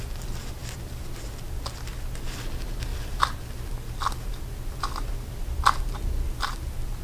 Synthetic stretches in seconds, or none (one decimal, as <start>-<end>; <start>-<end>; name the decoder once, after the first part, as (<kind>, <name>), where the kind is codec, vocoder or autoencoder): none